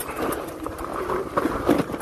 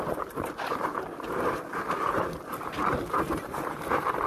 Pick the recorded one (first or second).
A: first